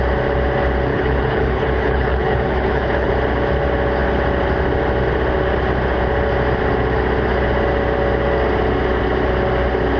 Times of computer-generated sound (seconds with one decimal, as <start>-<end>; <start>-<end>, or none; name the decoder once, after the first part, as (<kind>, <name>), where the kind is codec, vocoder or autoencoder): 0.9-3.1 (codec, HILCodec)